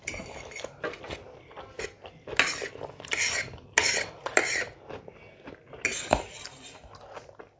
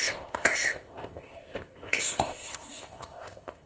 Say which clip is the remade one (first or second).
second